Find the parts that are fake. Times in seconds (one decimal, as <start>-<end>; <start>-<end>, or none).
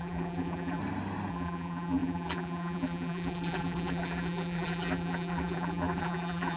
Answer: 0.0-0.8; 1.3-6.6